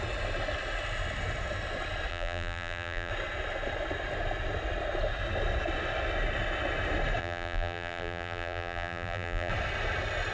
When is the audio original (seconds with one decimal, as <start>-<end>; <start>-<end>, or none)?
0.0-2.1; 3.1-7.2; 9.5-10.3